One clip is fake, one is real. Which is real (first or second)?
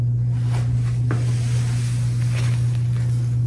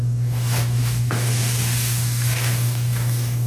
first